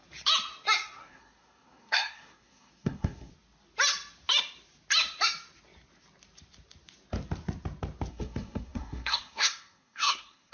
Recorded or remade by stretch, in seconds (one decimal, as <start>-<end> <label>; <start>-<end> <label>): 0.0-1.0 recorded; 1.0-3.3 remade; 3.3-8.1 recorded; 8.1-10.5 remade